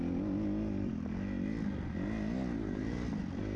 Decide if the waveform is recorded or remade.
recorded